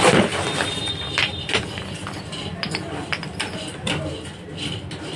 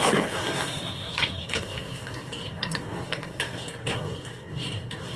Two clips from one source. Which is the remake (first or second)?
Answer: second